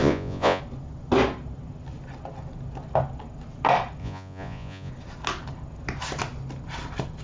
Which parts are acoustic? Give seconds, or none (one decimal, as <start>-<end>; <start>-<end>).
0.6-4.0; 4.9-7.2